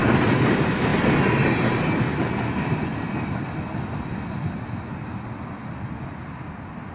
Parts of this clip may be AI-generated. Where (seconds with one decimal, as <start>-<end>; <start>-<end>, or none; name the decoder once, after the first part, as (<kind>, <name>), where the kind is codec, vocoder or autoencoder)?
none